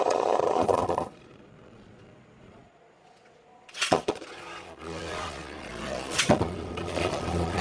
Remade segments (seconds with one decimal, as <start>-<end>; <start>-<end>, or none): 0.0-7.6